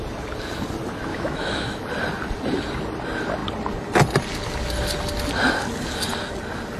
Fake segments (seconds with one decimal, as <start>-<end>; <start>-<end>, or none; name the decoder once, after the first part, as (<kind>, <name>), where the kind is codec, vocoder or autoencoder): 1.1-1.9 (autoencoder, DAC-VAE)

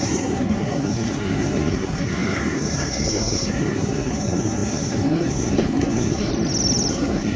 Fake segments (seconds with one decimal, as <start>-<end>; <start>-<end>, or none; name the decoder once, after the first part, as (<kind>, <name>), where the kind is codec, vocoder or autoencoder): 0.0-6.3 (codec, SNAC); 6.9-7.4

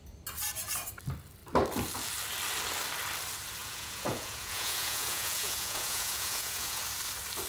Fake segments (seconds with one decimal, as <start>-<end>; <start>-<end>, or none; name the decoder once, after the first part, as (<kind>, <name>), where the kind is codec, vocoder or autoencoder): 3.6-6.8 (vocoder, Vocos)

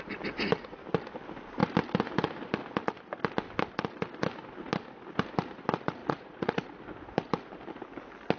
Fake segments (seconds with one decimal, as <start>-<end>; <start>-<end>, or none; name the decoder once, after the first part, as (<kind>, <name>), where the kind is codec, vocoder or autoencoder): 6.0-6.6 (vocoder, Vocos)

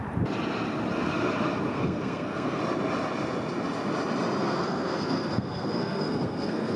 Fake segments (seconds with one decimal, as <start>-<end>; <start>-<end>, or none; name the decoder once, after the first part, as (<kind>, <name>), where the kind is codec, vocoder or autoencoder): 1.7-2.6 (codec, SNAC); 4.4-6.8

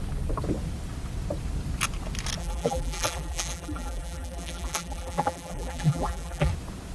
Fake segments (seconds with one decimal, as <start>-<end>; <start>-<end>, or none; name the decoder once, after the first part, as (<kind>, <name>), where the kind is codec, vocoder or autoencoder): 2.4-6.5 (vocoder, BigVGAN v2)

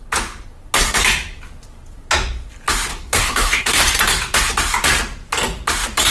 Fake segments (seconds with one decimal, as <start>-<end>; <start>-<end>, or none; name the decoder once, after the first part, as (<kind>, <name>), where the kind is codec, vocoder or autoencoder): 2.9-3.8 (codec, SNAC)